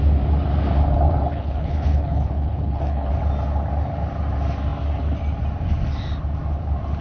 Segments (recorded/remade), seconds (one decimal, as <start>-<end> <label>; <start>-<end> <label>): 0.0-1.3 recorded; 1.3-3.1 remade; 3.1-7.0 recorded